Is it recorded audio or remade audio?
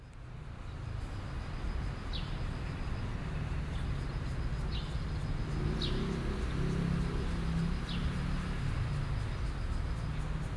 recorded